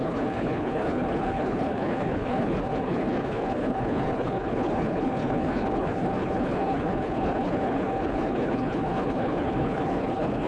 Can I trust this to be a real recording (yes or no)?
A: no